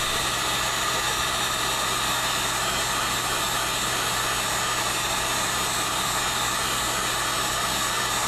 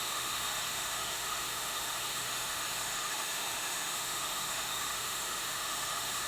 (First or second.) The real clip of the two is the first